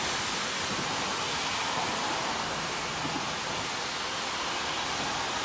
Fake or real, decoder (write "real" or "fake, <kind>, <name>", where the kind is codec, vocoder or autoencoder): real